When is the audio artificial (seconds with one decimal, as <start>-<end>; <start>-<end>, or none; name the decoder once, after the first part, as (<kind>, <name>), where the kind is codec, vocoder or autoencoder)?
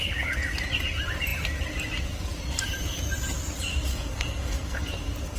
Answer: 3.9-4.9 (codec, SNAC)